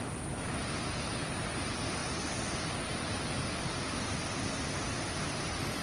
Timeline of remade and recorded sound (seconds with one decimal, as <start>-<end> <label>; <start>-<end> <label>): 0.0-2.0 recorded; 2.0-5.8 remade